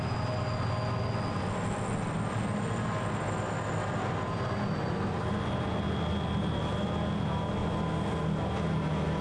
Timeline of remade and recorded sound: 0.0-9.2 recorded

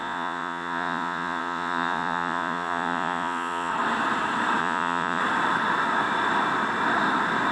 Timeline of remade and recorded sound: 0.0-3.7 remade; 3.7-4.6 recorded; 4.6-5.2 remade; 5.2-7.5 recorded

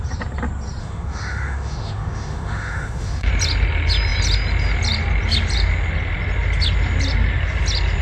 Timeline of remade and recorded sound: 0.0-0.8 recorded; 0.8-3.3 remade; 3.3-8.0 recorded

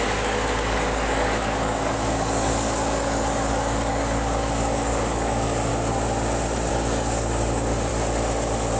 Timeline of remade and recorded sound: 0.0-5.7 remade; 5.7-6.7 recorded; 6.7-7.9 remade; 7.9-8.8 recorded